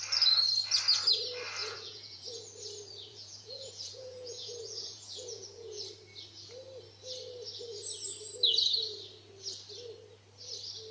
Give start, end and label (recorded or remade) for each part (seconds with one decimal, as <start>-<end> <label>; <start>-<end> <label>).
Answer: 0.0-1.6 recorded; 1.6-2.4 remade; 2.4-3.1 recorded; 3.1-5.8 remade; 5.8-10.9 recorded